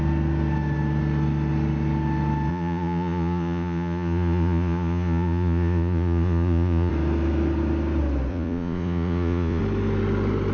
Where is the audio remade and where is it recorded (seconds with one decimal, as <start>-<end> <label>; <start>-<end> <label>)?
0.0-2.5 recorded; 2.5-6.9 remade; 6.9-8.3 recorded; 8.3-9.6 remade; 9.6-10.5 recorded